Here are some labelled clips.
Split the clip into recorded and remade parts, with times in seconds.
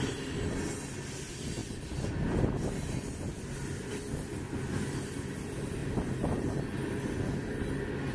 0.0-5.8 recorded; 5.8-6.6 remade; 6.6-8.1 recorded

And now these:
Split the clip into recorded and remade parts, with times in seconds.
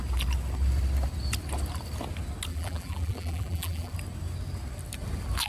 0.0-2.5 recorded; 2.5-3.9 remade; 3.9-5.5 recorded